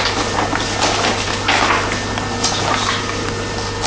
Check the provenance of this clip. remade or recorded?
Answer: recorded